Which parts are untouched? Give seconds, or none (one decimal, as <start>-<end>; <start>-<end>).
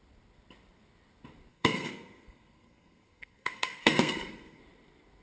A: 0.0-1.5; 4.6-5.2